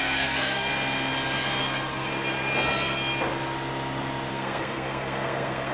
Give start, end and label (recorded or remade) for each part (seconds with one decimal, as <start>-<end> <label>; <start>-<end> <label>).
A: 0.0-0.7 remade; 0.7-1.6 recorded; 1.6-2.1 remade; 2.1-4.3 recorded; 4.3-5.7 remade